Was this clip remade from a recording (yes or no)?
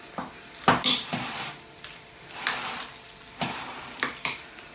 yes